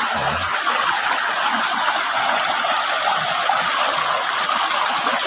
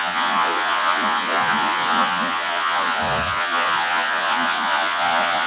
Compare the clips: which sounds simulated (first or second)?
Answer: second